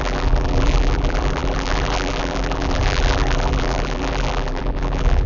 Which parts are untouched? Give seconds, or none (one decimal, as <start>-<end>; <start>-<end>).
none